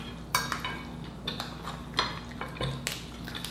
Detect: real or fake real